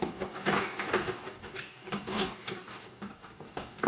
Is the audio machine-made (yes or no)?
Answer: yes